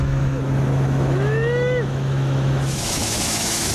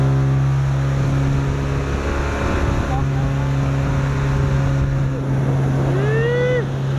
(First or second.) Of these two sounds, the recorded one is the second